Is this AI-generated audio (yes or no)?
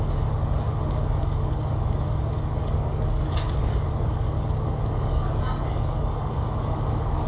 yes